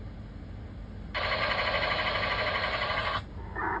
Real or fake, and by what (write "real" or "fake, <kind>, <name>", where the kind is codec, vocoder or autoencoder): real